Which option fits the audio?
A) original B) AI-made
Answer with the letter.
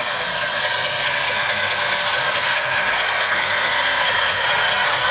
B